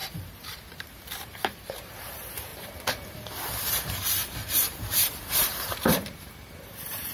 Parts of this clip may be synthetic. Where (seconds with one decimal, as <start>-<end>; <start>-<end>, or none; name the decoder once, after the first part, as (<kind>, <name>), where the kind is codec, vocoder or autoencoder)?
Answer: 0.0-7.1 (vocoder, BigVGAN v2)